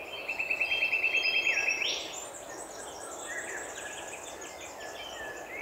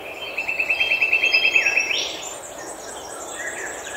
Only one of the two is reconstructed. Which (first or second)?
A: second